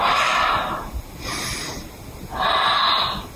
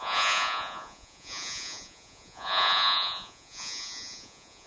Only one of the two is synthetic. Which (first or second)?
second